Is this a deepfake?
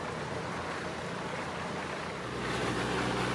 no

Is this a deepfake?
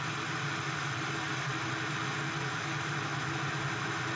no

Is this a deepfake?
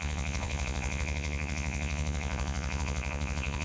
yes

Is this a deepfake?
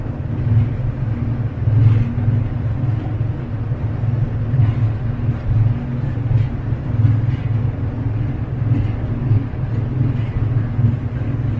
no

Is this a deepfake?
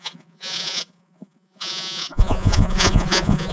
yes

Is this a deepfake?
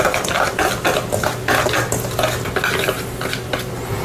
no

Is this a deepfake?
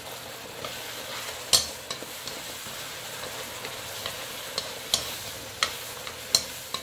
no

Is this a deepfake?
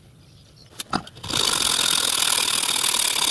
no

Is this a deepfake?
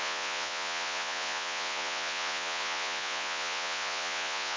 yes